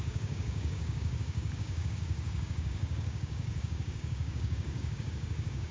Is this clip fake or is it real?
fake